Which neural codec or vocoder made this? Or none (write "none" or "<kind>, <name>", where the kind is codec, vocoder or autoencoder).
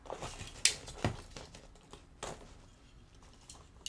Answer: none